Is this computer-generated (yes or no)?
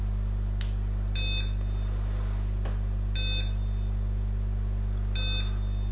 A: no